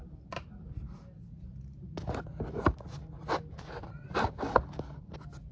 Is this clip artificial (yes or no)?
no